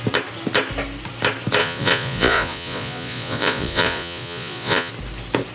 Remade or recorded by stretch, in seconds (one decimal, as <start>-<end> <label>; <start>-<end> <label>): 0.0-1.6 recorded; 1.6-4.9 remade; 4.9-5.5 recorded